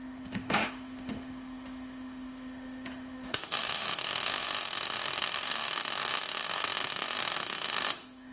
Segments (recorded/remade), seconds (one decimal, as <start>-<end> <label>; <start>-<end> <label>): 0.0-8.3 remade